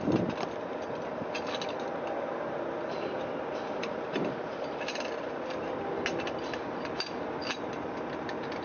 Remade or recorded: recorded